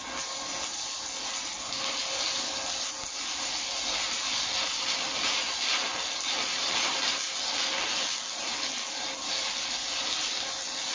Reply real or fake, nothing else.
real